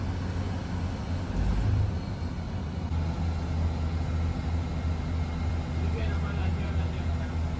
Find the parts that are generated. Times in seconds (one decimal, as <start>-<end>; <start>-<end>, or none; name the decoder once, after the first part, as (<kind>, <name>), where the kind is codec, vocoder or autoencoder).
none